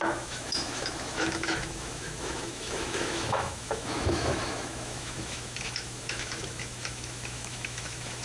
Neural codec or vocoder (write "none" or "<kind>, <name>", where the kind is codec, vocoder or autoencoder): autoencoder, DAC-VAE